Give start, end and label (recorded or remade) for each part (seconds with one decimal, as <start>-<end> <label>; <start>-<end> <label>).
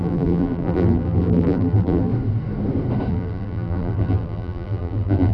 0.0-2.1 remade; 2.1-3.1 recorded; 3.1-5.3 remade